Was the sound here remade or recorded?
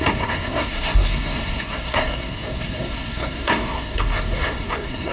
remade